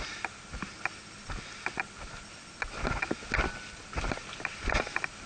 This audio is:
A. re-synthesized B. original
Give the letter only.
B